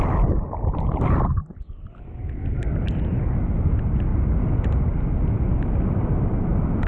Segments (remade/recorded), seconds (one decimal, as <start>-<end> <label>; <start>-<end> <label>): 0.0-6.9 recorded